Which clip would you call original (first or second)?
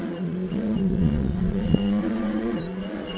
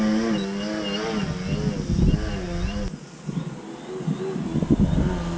second